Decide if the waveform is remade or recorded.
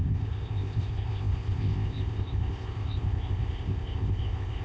remade